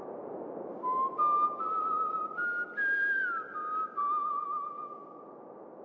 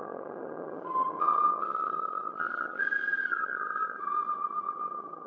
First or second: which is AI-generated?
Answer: second